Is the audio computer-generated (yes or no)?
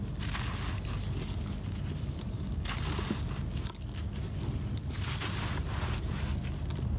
no